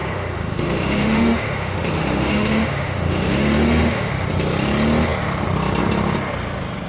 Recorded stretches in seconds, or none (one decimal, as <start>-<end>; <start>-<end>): 4.1-6.9